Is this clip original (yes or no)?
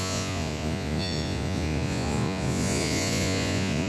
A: no